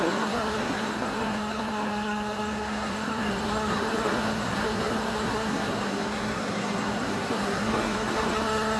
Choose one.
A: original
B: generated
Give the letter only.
B